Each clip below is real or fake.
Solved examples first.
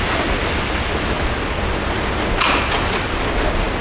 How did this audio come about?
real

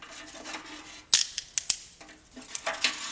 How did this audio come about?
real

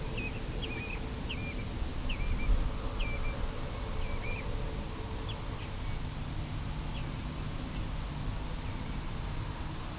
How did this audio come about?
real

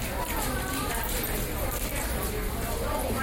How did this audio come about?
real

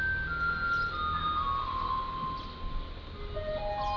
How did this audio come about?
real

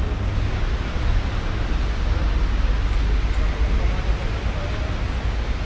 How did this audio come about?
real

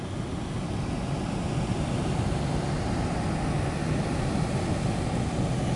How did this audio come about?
real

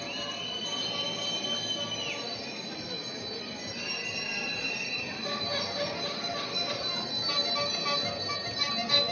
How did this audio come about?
real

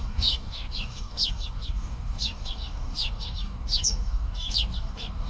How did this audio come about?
fake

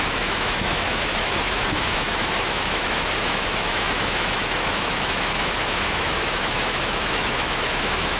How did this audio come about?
fake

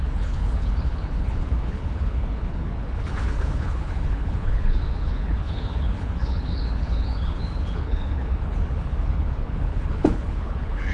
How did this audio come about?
fake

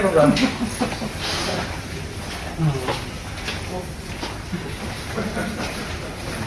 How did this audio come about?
real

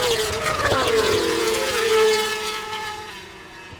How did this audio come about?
fake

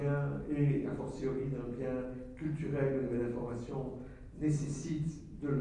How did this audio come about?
real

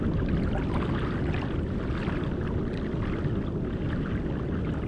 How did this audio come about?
real